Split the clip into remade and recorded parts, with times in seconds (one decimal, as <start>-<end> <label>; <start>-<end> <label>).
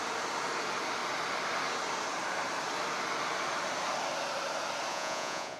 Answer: 0.0-4.9 recorded; 4.9-5.6 remade